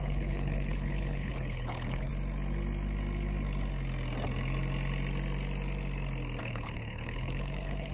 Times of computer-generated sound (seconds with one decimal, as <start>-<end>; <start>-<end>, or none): 0.0-2.1; 6.4-7.9